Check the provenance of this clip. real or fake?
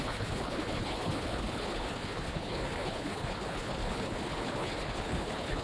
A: fake